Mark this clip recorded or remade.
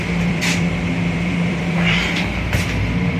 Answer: remade